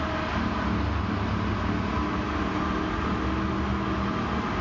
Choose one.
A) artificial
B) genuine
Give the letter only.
B